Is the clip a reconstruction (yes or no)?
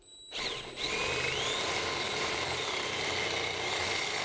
no